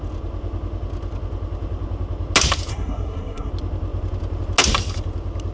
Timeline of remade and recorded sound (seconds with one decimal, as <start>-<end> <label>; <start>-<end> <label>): 0.0-2.7 recorded; 2.7-3.5 remade; 3.5-5.5 recorded